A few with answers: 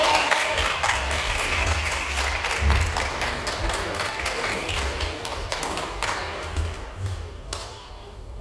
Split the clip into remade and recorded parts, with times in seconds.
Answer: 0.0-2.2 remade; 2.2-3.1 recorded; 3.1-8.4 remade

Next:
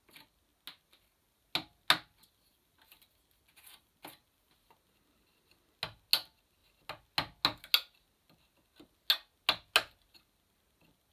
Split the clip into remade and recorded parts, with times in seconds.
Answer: 0.0-11.1 recorded

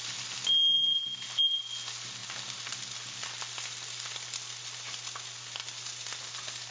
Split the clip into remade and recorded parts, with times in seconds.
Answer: 0.0-6.7 recorded

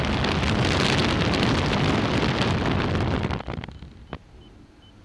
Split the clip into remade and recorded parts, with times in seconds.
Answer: 0.0-1.0 recorded; 1.0-4.0 remade; 4.0-5.0 recorded

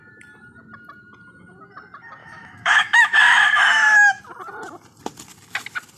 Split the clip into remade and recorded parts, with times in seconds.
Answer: 0.0-2.2 recorded; 2.2-4.2 remade; 4.2-6.0 recorded

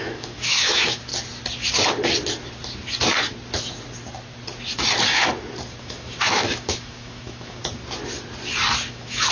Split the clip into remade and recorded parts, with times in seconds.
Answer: 0.0-1.1 remade; 1.1-5.8 recorded; 5.8-7.6 remade; 7.6-8.9 recorded; 8.9-9.3 remade

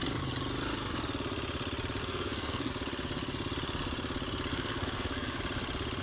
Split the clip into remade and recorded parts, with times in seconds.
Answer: 0.0-2.0 recorded; 2.0-2.7 remade; 2.7-4.5 recorded; 4.5-5.4 remade; 5.4-6.0 recorded